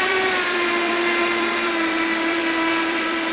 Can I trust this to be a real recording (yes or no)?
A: no